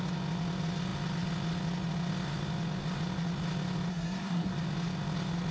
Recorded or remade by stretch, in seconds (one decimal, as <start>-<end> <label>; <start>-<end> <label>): 0.0-3.9 recorded; 3.9-4.5 remade; 4.5-5.5 recorded